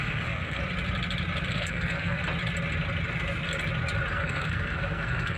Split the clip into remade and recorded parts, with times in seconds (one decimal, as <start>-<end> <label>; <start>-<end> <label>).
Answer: 0.0-0.6 remade; 0.6-1.5 recorded; 1.5-2.2 remade; 2.2-4.1 recorded; 4.1-5.4 remade